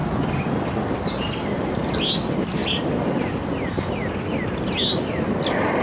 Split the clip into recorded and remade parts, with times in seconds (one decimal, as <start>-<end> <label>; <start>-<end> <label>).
0.0-5.8 recorded